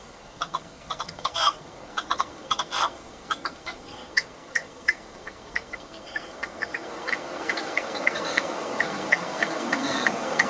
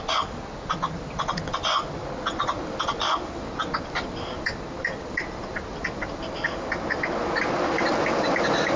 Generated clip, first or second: first